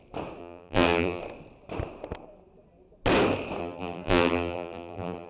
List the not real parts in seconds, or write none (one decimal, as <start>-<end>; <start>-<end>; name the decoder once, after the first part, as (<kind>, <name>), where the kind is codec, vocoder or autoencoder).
0.4-1.2 (vocoder, BigVGAN v2); 3.6-5.3